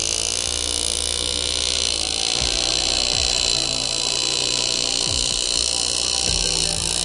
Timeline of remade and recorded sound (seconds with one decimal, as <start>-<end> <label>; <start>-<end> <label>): 0.0-7.0 recorded